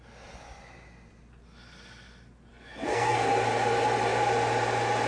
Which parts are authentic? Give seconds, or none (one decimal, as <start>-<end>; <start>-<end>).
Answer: 0.0-2.5; 3.3-5.1